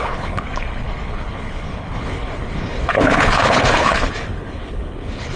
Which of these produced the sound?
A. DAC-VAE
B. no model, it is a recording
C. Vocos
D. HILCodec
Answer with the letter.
D